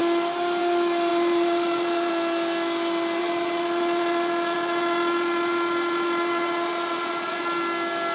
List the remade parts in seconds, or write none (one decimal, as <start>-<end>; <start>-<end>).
1.1-2.1; 3.2-7.6